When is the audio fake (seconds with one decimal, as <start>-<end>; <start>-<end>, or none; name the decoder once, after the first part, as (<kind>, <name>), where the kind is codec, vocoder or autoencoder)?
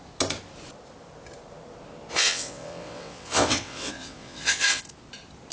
2.1-4.8 (vocoder, WaveNeXt)